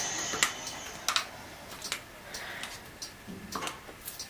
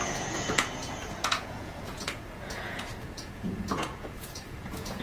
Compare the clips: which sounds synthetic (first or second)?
second